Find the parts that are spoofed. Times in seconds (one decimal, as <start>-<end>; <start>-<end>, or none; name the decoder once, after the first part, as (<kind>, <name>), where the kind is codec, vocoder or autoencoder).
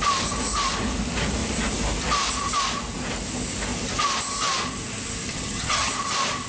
5.3-5.9 (vocoder, HiFi-GAN)